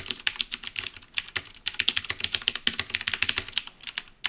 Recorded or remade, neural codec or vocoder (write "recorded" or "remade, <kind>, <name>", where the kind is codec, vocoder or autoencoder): recorded